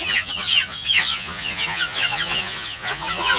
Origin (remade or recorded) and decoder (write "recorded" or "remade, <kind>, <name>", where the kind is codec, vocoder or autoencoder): remade, vocoder, Vocos